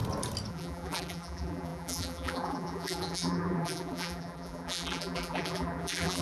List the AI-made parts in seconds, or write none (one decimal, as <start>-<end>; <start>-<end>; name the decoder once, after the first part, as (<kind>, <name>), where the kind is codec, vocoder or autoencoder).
0.5-6.2 (vocoder, BigVGAN v2)